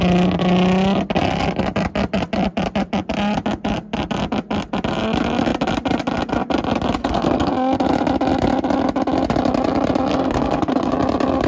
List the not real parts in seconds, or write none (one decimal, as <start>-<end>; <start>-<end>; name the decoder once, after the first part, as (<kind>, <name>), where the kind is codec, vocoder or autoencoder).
7.0-7.5 (codec, SNAC); 10.1-10.9